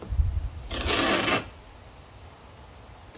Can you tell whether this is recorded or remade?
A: recorded